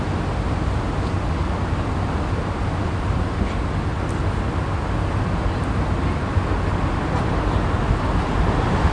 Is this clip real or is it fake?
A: real